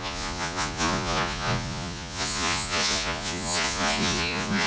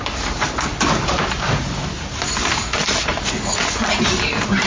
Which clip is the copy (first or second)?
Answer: first